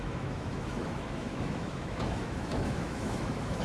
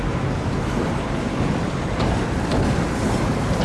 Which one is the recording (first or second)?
second